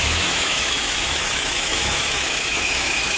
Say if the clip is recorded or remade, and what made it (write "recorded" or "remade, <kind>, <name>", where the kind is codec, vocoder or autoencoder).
remade, autoencoder, DAC-VAE